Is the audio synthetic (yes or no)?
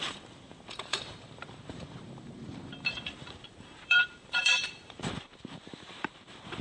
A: yes